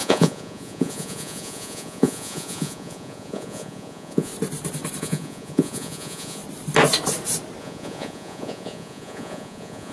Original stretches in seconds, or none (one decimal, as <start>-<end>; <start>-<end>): 4.3-5.0; 6.4-7.6